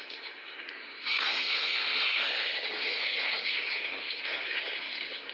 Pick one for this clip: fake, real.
fake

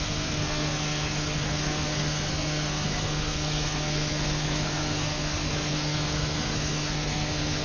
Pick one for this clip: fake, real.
fake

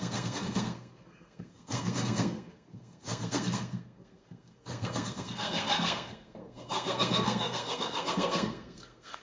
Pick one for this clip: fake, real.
fake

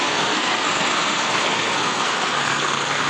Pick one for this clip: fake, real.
fake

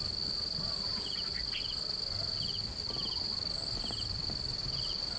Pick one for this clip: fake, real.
real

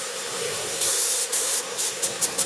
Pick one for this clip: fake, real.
fake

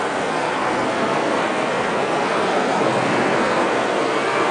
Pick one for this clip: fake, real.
fake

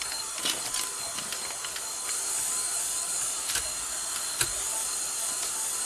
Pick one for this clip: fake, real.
real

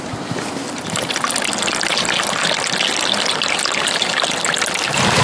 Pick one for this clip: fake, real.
real